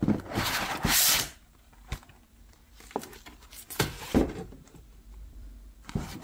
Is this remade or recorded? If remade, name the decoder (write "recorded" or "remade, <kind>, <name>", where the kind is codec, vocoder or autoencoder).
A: remade, vocoder, BigVGAN v2